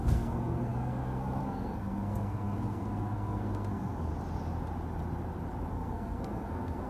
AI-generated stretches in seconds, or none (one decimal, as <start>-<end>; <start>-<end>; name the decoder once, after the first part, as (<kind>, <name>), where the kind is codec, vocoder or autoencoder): 0.0-4.1 (codec, SNAC); 5.7-6.9